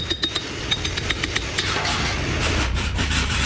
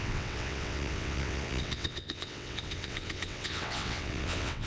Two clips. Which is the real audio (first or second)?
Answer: first